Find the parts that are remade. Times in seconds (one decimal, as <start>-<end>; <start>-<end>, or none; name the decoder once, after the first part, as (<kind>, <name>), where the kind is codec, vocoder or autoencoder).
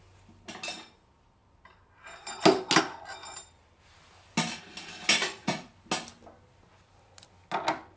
5.2-5.7 (vocoder, Vocos)